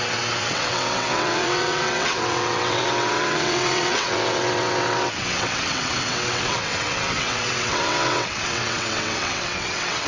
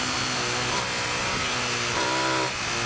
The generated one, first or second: first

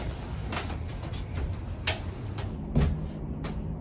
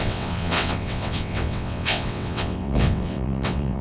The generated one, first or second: second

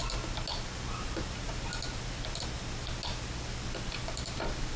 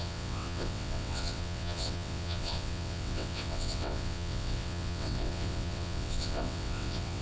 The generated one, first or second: second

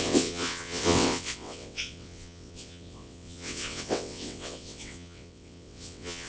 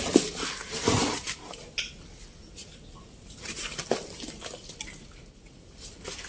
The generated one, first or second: first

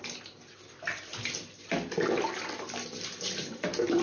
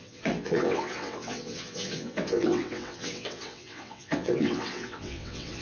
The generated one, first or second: second